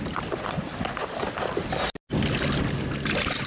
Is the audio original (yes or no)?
yes